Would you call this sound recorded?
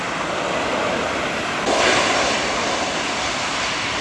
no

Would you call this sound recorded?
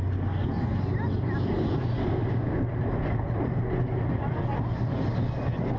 yes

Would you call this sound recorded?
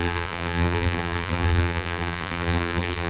no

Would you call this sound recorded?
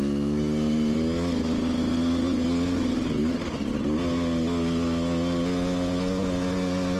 yes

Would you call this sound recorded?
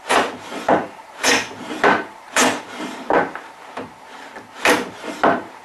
no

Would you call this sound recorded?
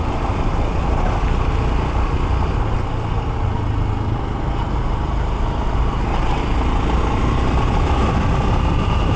yes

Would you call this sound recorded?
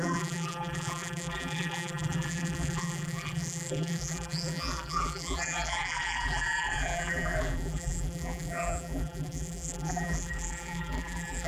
no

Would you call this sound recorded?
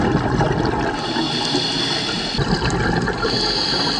yes